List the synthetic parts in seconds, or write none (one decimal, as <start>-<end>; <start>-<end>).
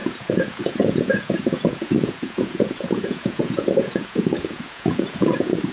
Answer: 0.0-5.7